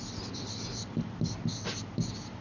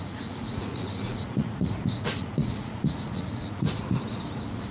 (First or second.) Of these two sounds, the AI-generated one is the second